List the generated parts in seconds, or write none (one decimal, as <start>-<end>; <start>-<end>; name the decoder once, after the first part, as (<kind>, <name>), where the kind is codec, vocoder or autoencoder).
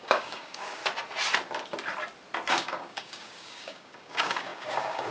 0.0-0.8 (codec, DAC); 2.5-5.1